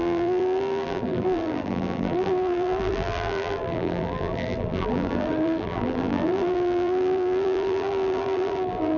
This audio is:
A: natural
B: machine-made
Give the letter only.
B